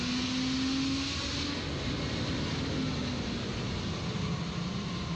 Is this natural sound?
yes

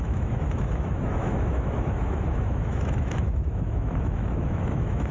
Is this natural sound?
no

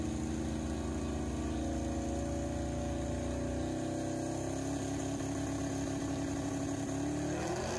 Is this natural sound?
yes